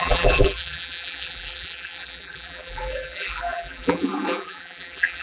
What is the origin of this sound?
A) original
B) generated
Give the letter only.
B